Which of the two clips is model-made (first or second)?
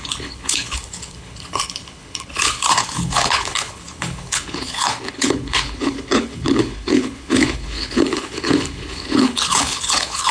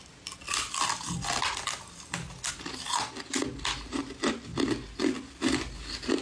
first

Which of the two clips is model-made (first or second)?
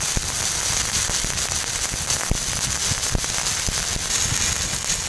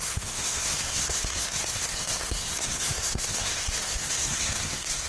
second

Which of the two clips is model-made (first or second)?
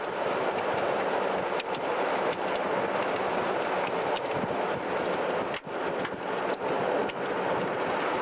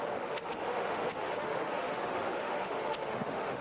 second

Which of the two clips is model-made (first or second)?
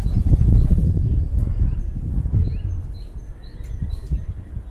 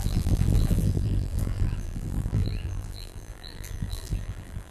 second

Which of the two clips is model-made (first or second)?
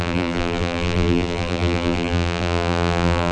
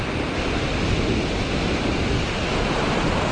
first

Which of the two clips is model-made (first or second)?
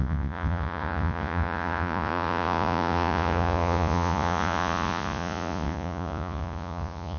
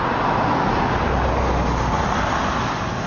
first